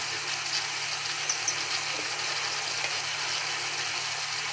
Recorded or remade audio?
recorded